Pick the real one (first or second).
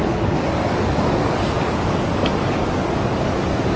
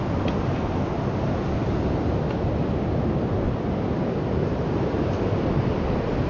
second